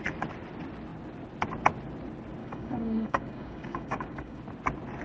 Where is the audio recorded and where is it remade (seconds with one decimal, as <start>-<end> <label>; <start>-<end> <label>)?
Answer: 0.0-2.4 recorded; 2.4-4.4 remade; 4.4-5.0 recorded